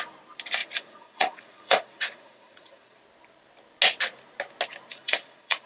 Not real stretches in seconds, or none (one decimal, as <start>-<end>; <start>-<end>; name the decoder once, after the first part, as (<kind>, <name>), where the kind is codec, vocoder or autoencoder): 0.6-3.0 (vocoder, Vocos); 4.9-5.7